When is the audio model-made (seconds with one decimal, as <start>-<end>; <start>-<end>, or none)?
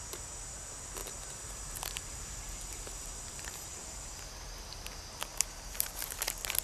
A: 1.0-4.3; 5.3-6.6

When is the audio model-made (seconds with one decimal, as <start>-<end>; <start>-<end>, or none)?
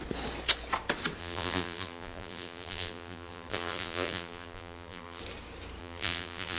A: 1.2-5.2; 5.8-6.6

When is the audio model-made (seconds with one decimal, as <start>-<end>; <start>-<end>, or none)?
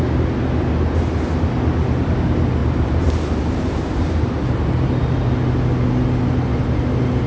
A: 2.6-4.9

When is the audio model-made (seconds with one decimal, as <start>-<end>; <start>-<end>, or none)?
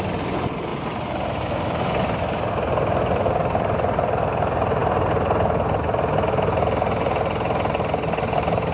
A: none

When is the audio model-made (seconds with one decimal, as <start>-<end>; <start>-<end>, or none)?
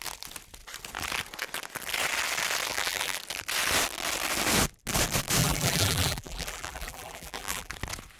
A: 2.7-3.2; 5.4-7.7